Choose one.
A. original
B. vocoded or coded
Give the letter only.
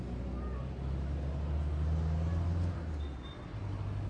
A